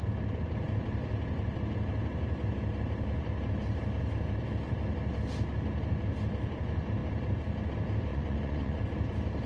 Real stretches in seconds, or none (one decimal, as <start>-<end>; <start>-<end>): 0.0-8.1; 8.8-9.5